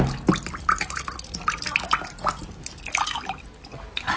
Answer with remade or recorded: recorded